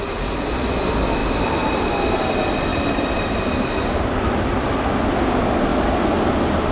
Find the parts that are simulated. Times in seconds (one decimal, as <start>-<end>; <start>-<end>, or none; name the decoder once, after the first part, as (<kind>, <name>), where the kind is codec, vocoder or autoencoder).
2.7-4.1 (vocoder, BigVGAN v2)